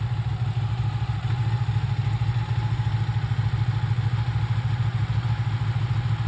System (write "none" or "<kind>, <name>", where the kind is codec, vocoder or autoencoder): none